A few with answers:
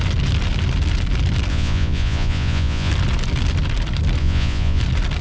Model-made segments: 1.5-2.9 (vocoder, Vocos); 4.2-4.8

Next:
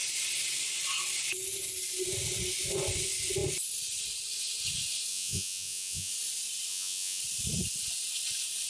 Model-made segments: 5.1-6.1 (vocoder, Vocos); 6.7-7.2

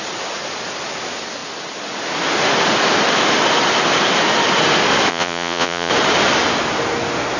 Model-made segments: 5.1-5.9 (vocoder, Vocos)

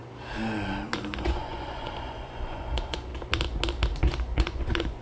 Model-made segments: 1.0-3.1 (vocoder, Vocos); 4.0-5.0

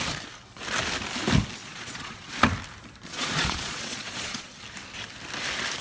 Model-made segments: 1.6-2.3 (vocoder, Vocos); 3.1-4.5

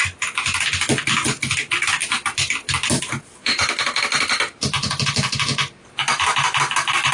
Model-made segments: none

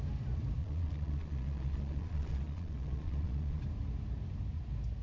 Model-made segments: 0.6-3.6 (vocoder, Vocos)

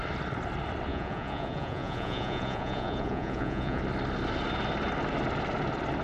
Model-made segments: 0.9-3.8 (vocoder, Vocos)